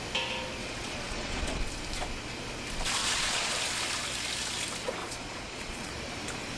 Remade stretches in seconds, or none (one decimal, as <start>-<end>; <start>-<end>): 0.6-1.6; 3.0-3.5; 5.0-5.9

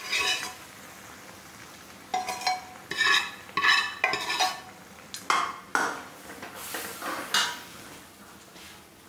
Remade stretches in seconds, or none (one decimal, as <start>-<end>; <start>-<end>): none

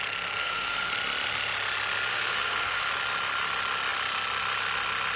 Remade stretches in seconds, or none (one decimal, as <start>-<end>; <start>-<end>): 0.4-0.9; 2.1-2.9

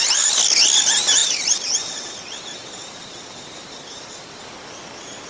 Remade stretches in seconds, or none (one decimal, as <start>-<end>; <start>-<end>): 1.2-4.4

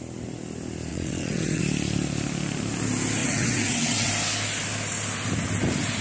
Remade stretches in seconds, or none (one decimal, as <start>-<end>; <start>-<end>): 0.9-1.6; 3.2-4.1

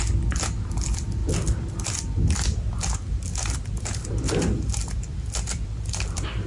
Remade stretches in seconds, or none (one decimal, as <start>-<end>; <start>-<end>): none